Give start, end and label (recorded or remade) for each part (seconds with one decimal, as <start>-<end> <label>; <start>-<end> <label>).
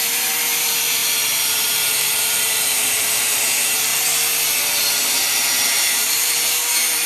0.0-3.9 remade; 3.9-4.9 recorded; 4.9-7.1 remade